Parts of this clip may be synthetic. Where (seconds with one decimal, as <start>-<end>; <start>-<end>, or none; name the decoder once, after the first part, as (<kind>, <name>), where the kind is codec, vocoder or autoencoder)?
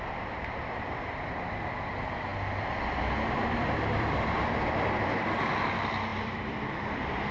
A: 0.0-2.3 (vocoder, BigVGAN v2); 3.3-7.3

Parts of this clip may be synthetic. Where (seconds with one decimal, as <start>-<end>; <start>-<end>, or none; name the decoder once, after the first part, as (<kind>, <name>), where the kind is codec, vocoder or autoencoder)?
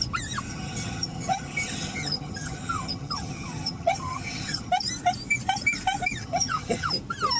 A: 0.5-4.7 (vocoder, HiFi-GAN); 6.2-6.9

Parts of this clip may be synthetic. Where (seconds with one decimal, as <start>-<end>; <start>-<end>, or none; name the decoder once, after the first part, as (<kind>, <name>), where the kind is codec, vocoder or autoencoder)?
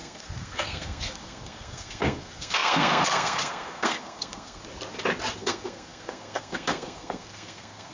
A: 0.0-4.6 (codec, SNAC); 5.4-7.9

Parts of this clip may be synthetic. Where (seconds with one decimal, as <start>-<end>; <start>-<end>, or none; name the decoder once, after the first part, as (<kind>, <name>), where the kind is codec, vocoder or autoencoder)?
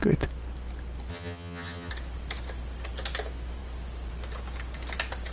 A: 1.1-1.9 (vocoder, HiFi-GAN)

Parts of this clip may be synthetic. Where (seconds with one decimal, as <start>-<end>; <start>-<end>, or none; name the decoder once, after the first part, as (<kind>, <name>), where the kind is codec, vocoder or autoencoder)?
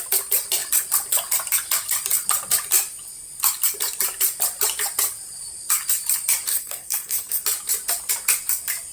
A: 6.5-7.4 (codec, SNAC)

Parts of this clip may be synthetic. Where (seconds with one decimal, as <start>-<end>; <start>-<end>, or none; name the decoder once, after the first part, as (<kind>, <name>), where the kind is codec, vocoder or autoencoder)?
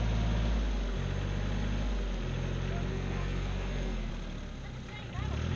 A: 2.9-4.1 (codec, SNAC)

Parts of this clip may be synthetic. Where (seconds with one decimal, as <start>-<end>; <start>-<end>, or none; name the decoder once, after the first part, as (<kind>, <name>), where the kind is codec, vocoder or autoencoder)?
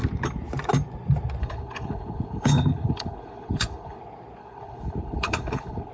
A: 1.4-4.0 (codec, HILCodec); 4.4-5.9